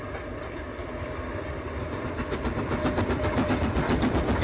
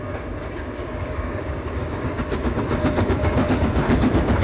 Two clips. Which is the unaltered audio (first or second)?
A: first